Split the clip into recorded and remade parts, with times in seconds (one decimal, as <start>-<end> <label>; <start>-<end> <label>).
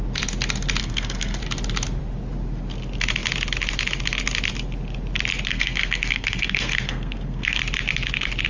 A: 0.0-0.8 recorded; 0.8-1.4 remade; 1.4-5.5 recorded; 5.5-7.6 remade; 7.6-8.5 recorded